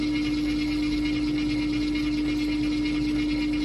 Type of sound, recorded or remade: recorded